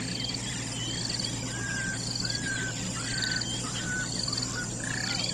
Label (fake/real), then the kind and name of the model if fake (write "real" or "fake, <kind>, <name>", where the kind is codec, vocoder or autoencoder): real